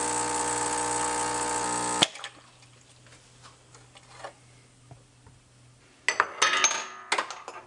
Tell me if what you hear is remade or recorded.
recorded